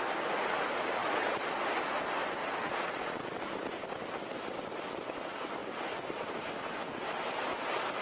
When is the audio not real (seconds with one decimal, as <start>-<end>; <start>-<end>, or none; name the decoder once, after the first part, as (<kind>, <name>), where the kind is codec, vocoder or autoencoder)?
1.0-1.6 (vocoder, Vocos); 2.4-3.5